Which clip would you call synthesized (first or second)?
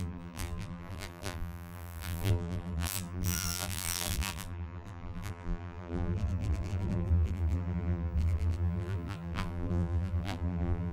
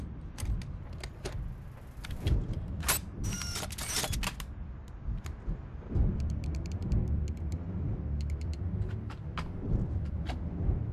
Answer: first